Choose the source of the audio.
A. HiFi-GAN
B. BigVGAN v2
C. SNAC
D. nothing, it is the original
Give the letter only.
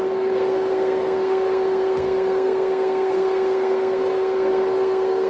C